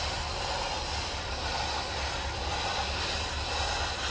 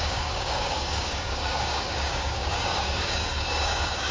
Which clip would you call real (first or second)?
first